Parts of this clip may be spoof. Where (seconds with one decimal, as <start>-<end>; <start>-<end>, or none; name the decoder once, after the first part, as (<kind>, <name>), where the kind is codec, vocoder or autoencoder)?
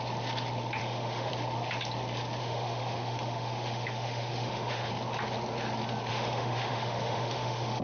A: 0.8-1.3 (autoencoder, DAC-VAE); 2.4-4.9; 6.1-7.8